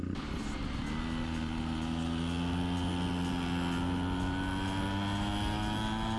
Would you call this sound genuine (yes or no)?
yes